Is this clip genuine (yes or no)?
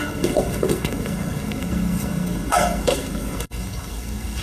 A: no